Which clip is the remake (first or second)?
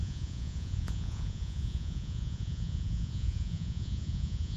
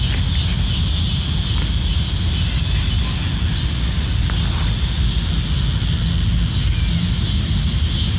first